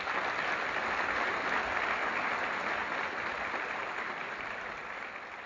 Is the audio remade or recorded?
recorded